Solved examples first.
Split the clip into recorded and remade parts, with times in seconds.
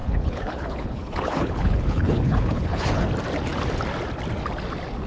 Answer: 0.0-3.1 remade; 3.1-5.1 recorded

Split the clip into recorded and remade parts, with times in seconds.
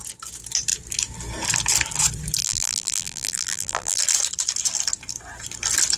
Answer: 0.0-2.4 recorded; 2.4-4.0 remade; 4.0-6.0 recorded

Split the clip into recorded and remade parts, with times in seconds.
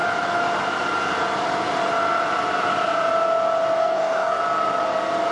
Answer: 0.0-3.8 recorded; 3.8-4.4 remade; 4.4-5.3 recorded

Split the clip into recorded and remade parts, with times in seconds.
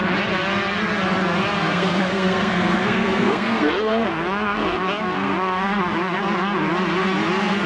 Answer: 0.0-1.6 recorded; 1.6-6.2 remade; 6.2-7.7 recorded